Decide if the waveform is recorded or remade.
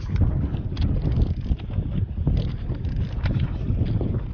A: recorded